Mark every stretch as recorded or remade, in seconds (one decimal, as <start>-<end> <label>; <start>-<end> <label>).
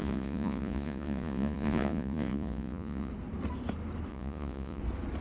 0.0-3.1 remade; 3.1-4.1 recorded; 4.1-4.8 remade; 4.8-5.2 recorded